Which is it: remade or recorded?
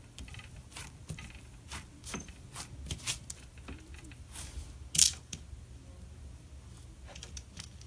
recorded